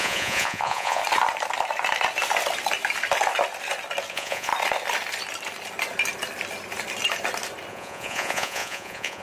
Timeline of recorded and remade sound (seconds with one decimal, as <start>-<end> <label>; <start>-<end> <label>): 0.0-1.0 remade; 1.0-4.1 recorded; 4.1-4.5 remade; 4.5-7.7 recorded; 7.7-9.2 remade